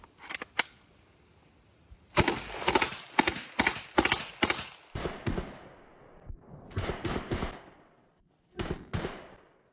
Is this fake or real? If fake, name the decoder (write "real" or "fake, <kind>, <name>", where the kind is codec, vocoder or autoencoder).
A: real